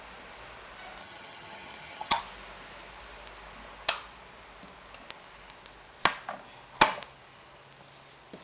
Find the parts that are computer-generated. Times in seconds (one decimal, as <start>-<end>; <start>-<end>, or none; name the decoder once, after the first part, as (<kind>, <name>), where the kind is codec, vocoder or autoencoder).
1.0-2.2 (vocoder, HiFi-GAN)